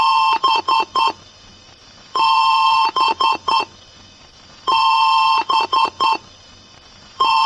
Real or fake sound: fake